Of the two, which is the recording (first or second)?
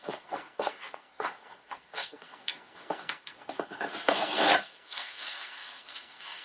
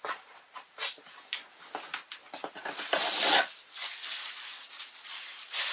second